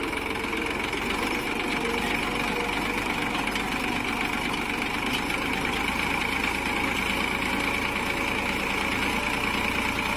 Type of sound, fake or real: real